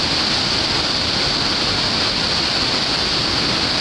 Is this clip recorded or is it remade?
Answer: recorded